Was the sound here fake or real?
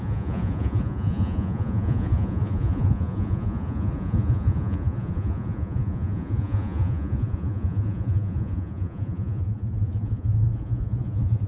fake